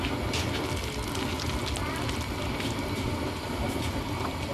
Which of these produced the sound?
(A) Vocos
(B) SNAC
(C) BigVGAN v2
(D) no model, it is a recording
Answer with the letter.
D